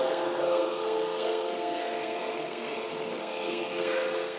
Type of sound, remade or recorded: remade